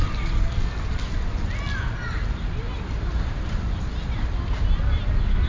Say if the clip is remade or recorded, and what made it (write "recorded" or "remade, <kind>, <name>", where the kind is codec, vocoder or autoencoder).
recorded